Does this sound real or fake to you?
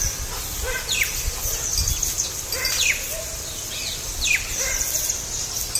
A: real